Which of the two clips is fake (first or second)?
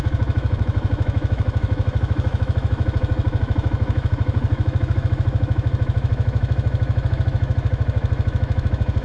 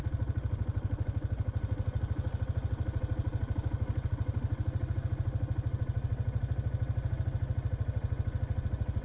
first